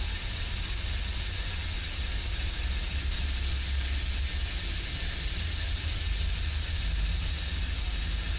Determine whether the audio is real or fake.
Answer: real